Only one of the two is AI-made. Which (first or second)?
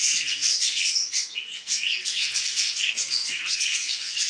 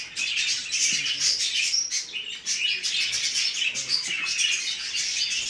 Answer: first